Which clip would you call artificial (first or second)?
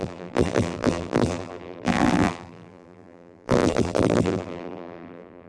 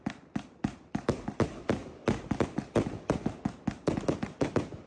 first